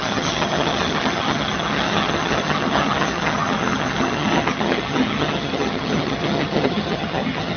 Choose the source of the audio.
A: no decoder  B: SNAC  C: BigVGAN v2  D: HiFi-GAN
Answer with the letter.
D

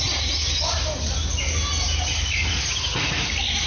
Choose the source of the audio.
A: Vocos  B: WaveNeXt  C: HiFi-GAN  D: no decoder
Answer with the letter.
D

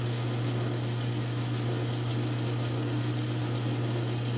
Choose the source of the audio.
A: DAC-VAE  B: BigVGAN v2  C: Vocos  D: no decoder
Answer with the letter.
D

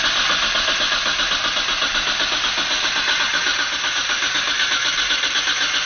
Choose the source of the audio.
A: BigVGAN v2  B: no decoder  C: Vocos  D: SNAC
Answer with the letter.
B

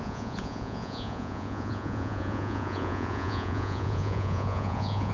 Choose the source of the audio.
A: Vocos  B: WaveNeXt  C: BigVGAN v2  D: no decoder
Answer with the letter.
A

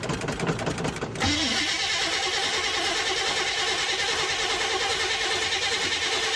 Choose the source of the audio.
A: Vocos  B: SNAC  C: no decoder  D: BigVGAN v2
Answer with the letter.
C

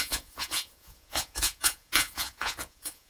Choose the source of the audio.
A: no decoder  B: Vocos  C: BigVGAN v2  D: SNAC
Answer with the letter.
B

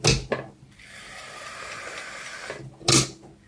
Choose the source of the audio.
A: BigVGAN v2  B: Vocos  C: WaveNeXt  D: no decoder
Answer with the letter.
D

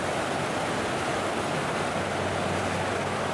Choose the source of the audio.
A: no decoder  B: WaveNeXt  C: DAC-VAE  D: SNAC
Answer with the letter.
A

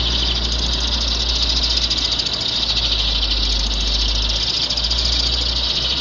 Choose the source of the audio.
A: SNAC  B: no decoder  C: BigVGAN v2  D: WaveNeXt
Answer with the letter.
B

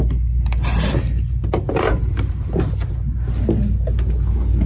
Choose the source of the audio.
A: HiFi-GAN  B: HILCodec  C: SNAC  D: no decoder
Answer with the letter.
D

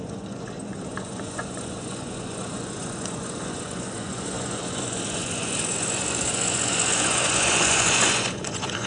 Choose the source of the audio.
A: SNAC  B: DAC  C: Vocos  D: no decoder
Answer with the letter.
C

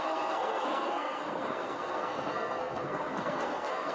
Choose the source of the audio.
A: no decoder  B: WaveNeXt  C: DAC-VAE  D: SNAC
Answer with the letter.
D